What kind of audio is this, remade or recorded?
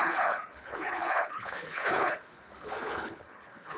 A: remade